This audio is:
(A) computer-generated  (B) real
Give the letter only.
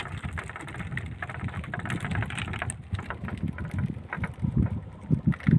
B